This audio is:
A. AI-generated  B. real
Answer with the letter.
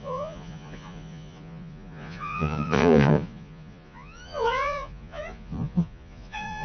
A